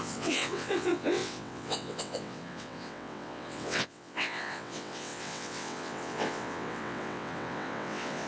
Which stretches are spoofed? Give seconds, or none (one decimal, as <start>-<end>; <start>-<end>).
0.0-8.3